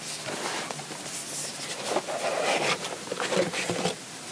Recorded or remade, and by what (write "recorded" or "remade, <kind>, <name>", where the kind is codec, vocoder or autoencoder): recorded